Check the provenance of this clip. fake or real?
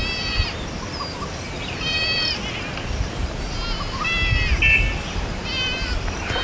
real